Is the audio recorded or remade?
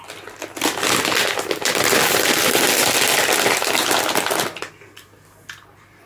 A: recorded